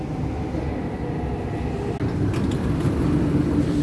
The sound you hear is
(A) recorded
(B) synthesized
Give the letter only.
A